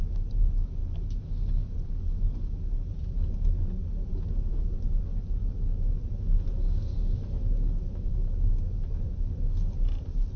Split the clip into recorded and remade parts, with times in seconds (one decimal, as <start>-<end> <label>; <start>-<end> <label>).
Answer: 0.0-10.4 recorded